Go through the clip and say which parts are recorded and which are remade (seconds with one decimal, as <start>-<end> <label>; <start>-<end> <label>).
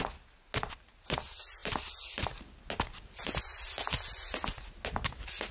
0.0-5.5 recorded